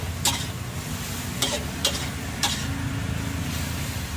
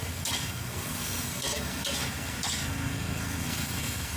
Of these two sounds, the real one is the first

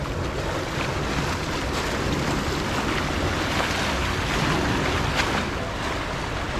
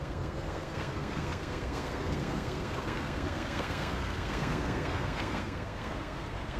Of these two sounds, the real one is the first